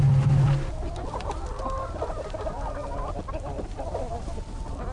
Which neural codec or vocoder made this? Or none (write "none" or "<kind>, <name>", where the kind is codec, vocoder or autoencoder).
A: none